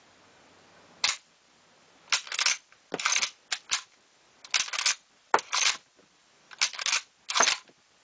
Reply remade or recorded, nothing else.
recorded